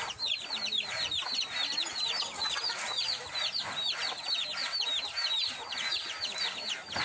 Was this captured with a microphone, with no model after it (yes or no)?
yes